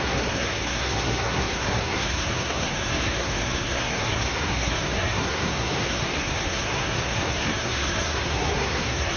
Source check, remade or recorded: remade